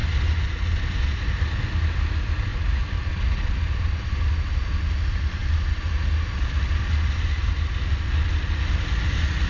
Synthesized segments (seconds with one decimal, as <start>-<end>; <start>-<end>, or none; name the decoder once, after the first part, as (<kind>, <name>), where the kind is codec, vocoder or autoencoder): none